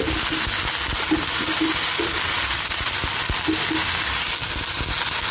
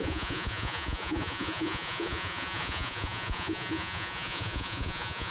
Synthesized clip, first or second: second